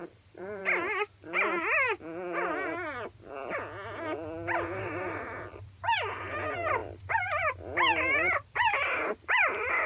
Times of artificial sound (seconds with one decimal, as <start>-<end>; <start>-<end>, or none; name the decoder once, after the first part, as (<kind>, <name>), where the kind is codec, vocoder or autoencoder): 0.0-0.6 (vocoder, BigVGAN v2); 4.8-9.9